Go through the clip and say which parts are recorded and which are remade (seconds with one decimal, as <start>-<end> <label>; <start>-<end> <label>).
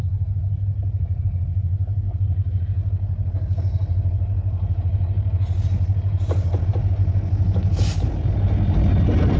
0.0-9.4 recorded